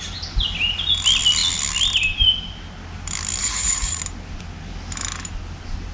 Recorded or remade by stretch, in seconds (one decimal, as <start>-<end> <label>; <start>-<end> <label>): 0.0-3.4 recorded; 3.4-4.0 remade; 4.0-5.9 recorded